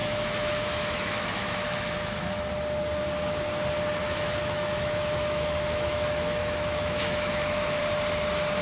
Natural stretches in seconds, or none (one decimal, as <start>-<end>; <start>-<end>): 2.4-4.0; 7.8-8.6

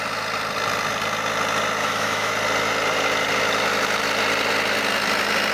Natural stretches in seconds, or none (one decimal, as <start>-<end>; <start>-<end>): 0.0-1.8; 2.3-5.5

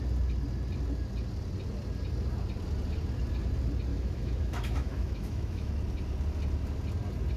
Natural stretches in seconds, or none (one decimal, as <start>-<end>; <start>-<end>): 0.0-3.9; 5.7-7.4

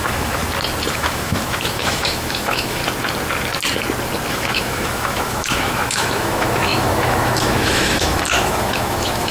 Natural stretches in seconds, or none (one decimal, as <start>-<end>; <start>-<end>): 0.4-0.9; 2.8-4.3

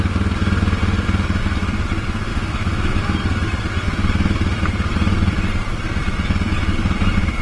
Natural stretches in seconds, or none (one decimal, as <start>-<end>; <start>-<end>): 0.0-2.3; 3.0-7.4

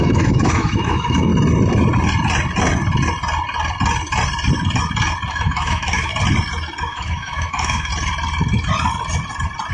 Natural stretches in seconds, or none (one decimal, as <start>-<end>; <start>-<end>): 1.3-5.3; 6.1-6.8; 7.9-9.7

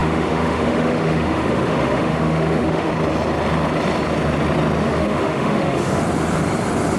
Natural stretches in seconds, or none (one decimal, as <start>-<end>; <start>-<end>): 2.9-4.8; 6.0-7.0